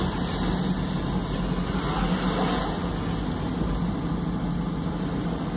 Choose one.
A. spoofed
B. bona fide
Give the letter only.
B